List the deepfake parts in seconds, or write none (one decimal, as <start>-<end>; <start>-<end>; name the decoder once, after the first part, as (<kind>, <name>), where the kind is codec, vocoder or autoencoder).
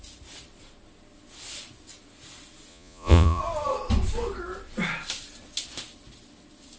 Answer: 2.7-3.4 (vocoder, Vocos)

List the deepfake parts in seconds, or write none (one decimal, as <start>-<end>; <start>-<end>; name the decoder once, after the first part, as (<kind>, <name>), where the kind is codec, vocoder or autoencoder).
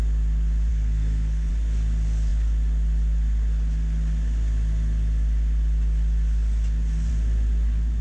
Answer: 0.7-1.5 (codec, SNAC)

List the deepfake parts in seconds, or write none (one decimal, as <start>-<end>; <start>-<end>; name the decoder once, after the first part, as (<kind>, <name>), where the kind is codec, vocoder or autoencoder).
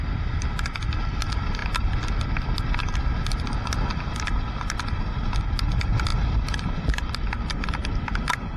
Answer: none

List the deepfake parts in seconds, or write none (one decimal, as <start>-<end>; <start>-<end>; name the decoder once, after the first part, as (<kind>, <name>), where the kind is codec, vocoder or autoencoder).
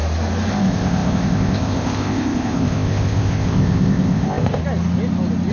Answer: 0.5-4.6 (codec, ZipCodec)